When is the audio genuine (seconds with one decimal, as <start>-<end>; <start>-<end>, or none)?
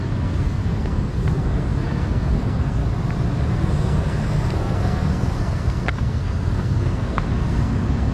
2.8-3.5